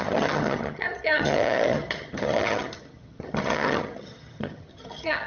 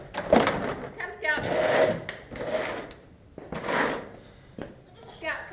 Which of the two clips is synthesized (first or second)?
first